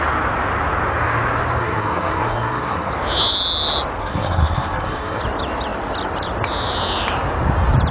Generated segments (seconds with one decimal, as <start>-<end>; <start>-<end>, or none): 1.6-2.9; 4.0-5.2